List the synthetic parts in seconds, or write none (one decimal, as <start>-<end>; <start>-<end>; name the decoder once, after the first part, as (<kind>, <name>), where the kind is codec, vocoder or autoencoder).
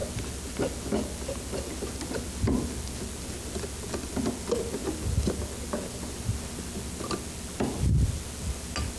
none